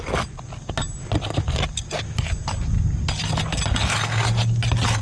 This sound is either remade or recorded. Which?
recorded